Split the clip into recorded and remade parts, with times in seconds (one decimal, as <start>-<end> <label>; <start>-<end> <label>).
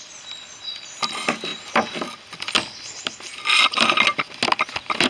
0.0-5.1 recorded